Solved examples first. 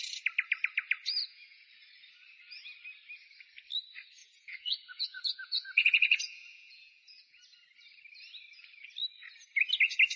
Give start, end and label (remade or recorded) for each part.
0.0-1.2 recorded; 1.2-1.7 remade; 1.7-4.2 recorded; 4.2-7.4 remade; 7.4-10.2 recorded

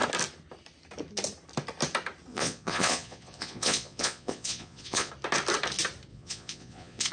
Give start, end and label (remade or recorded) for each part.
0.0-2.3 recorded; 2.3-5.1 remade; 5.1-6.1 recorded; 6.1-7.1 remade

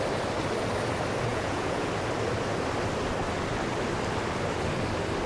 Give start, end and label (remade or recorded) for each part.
0.0-1.3 recorded; 1.3-1.9 remade; 1.9-5.3 recorded